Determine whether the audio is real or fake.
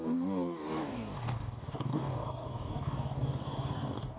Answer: fake